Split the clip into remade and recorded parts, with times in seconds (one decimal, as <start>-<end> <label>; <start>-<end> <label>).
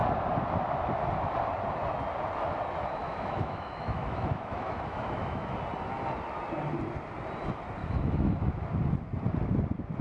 0.0-3.0 recorded; 3.0-5.5 remade; 5.5-7.8 recorded; 7.8-8.5 remade; 8.5-10.0 recorded